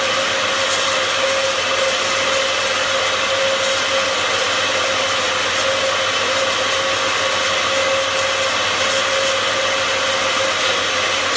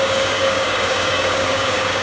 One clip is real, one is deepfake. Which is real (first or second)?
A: first